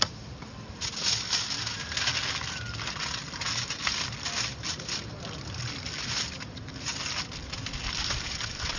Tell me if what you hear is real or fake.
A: real